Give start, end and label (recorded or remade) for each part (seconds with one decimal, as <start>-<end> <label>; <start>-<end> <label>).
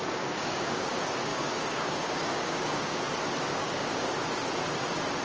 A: 0.0-0.9 remade; 0.9-1.3 recorded; 1.3-3.0 remade; 3.0-3.5 recorded; 3.5-4.1 remade; 4.1-5.2 recorded